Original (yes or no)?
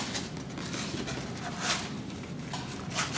yes